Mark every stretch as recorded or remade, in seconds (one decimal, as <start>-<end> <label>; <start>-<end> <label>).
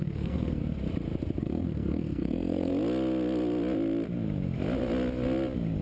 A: 0.0-0.6 remade; 0.6-1.4 recorded; 1.4-2.7 remade; 2.7-5.8 recorded